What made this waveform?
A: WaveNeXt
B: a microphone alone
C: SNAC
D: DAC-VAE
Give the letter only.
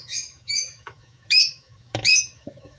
D